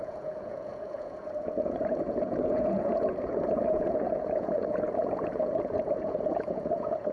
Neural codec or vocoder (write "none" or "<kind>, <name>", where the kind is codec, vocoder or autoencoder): vocoder, Vocos